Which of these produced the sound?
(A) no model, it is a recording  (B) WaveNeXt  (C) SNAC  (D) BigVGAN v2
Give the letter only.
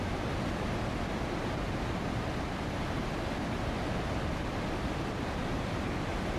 A